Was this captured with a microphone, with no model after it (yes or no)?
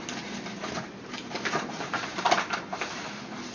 no